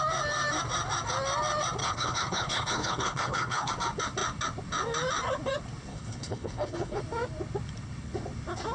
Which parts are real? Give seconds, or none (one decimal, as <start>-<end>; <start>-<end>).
0.0-1.8; 3.7-5.9; 7.0-8.7